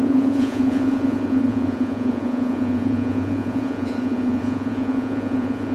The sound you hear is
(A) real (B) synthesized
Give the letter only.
B